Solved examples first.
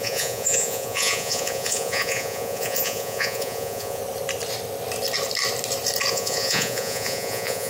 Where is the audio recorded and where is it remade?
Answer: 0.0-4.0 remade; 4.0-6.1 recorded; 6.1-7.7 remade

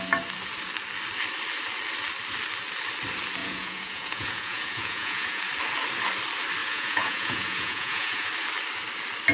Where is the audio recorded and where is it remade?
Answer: 0.0-3.4 recorded; 3.4-5.4 remade; 5.4-6.6 recorded; 6.6-8.3 remade; 8.3-9.3 recorded

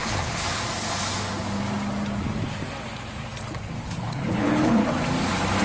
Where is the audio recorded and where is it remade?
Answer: 0.0-0.4 remade; 0.4-3.8 recorded; 3.8-4.8 remade; 4.8-5.6 recorded

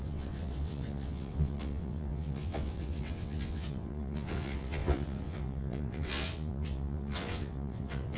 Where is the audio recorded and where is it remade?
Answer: 0.0-8.2 remade